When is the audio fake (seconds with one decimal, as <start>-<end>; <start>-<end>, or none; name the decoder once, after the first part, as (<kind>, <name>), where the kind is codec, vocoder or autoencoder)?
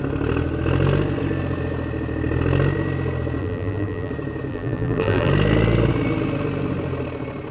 3.4-4.1 (vocoder, BigVGAN v2); 4.5-5.3